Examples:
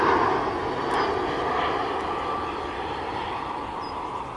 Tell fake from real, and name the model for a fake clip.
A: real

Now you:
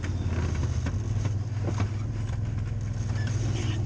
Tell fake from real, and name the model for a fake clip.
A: real